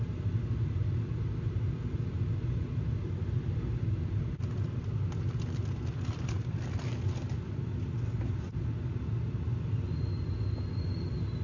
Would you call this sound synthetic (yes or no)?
no